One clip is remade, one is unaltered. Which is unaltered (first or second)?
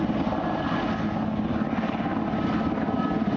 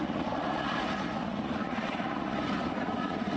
first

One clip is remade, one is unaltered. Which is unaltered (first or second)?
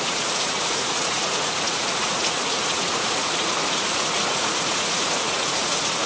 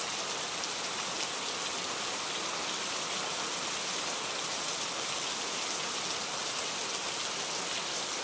second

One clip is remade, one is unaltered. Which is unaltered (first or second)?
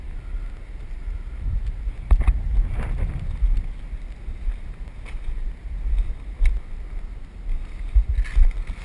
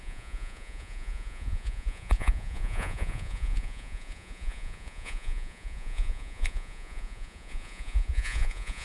first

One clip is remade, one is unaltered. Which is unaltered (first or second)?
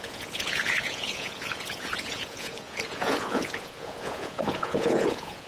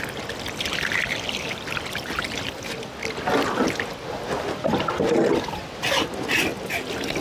second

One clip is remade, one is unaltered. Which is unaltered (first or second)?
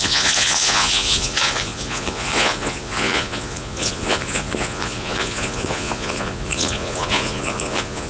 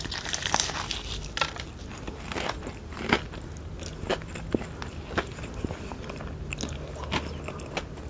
second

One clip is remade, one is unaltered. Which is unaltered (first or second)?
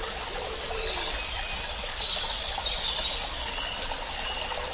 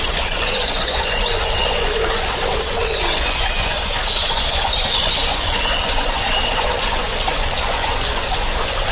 first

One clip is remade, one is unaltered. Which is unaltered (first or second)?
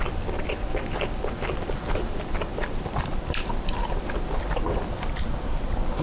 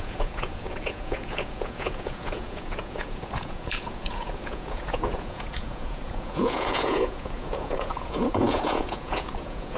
first